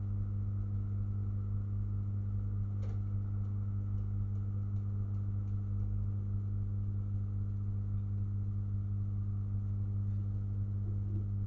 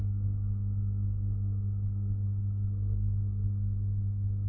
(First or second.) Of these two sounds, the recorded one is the first